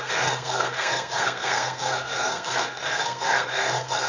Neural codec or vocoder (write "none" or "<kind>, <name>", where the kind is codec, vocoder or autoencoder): codec, SNAC